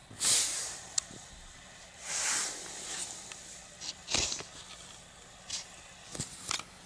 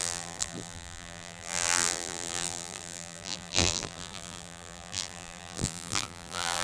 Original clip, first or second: first